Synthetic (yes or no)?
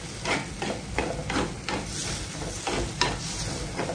no